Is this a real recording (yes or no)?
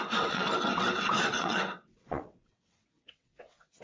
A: no